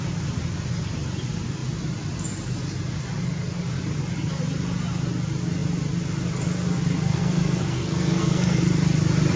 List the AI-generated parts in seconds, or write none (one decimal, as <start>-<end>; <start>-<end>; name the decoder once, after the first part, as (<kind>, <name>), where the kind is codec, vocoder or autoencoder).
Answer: 7.1-8.6 (codec, SNAC)